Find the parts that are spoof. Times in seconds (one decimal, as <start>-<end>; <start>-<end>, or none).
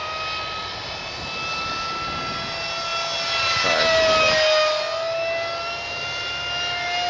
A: none